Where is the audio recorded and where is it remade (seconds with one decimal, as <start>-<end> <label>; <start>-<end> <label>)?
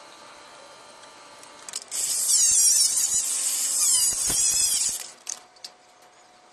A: 0.0-6.5 recorded